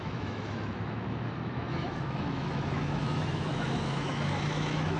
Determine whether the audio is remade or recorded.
remade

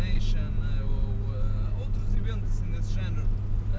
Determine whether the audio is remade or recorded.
recorded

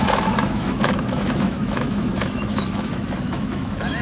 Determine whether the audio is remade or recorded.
remade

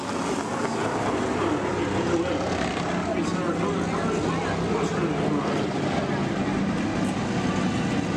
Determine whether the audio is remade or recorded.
recorded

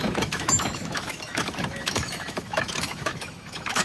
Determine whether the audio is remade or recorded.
remade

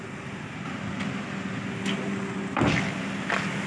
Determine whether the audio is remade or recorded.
recorded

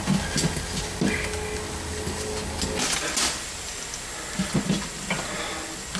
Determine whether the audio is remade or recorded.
recorded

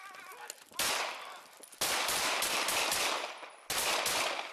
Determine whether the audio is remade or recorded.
recorded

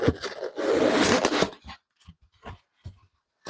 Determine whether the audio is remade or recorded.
recorded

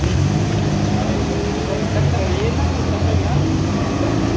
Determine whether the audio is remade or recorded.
recorded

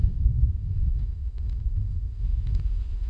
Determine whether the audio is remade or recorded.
remade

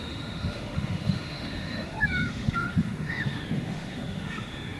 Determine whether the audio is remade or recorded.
remade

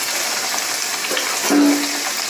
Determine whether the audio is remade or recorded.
recorded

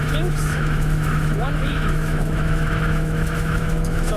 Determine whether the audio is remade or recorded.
remade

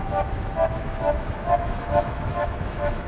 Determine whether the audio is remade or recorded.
remade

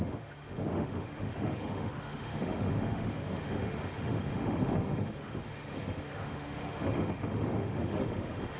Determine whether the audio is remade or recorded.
remade